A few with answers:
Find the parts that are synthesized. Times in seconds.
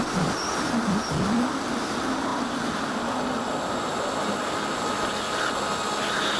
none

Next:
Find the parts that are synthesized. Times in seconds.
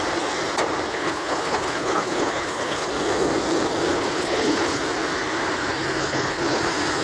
0.9-2.9; 3.9-4.8; 6.0-6.6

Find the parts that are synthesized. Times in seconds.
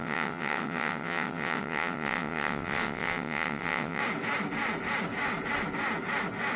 0.0-4.0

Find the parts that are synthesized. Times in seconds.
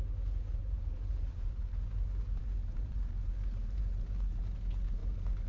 0.6-3.8; 5.0-5.5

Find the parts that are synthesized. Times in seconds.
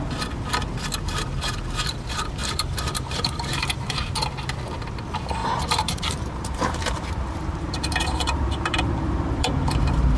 2.4-4.2; 5.4-10.2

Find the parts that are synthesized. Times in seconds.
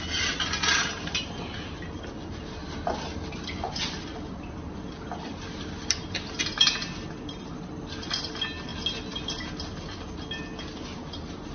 none